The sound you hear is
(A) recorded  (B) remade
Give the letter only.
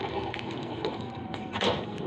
B